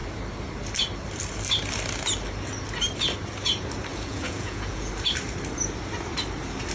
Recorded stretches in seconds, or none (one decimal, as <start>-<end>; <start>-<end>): 0.0-3.9; 4.9-6.7